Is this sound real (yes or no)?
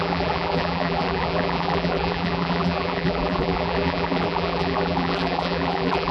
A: no